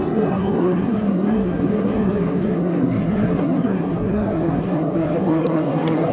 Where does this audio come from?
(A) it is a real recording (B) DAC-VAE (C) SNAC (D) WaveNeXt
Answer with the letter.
C